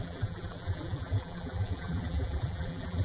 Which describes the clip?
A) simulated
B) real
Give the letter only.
A